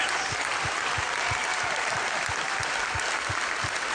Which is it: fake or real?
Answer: real